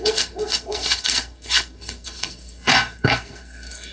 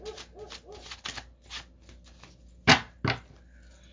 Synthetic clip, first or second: first